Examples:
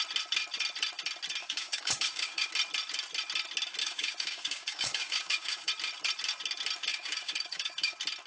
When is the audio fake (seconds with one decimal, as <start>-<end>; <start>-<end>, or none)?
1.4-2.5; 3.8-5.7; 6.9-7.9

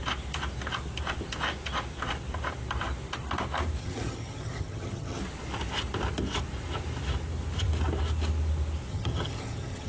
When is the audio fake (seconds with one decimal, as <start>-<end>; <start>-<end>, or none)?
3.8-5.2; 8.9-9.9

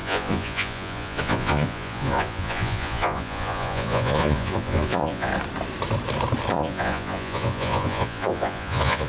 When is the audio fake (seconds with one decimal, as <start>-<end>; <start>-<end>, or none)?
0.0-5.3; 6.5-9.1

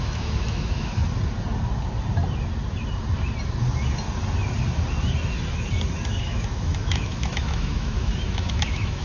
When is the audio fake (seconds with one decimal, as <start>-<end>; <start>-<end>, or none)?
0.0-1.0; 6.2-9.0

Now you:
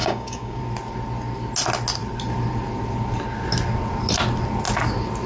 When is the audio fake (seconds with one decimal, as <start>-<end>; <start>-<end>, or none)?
0.0-0.6

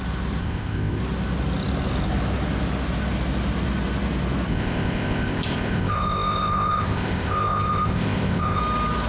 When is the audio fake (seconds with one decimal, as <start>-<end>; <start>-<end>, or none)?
0.4-1.0; 4.5-8.6